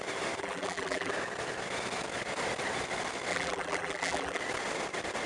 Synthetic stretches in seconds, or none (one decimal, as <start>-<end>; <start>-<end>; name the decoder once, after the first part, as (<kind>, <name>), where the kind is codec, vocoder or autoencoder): 0.4-1.1 (vocoder, BigVGAN v2); 3.3-4.4